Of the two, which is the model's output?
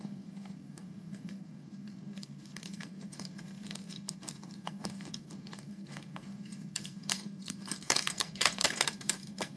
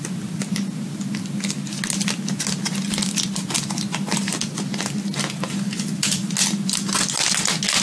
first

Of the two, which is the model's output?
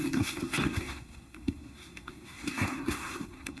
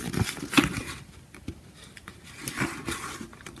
first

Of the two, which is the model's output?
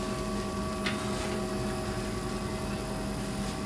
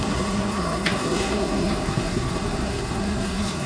second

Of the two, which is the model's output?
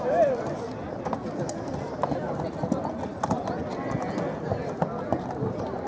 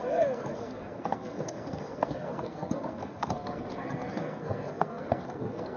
second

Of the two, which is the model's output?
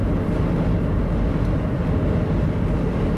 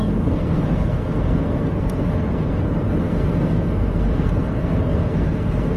second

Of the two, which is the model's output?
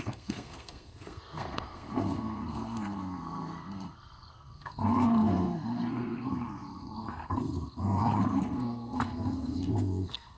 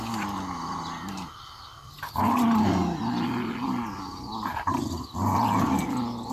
first